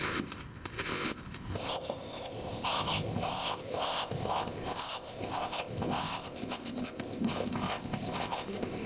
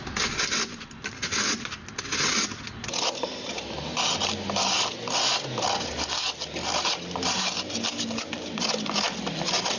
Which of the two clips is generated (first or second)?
first